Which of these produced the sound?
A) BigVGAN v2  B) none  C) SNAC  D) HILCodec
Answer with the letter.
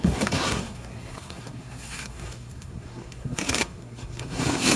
C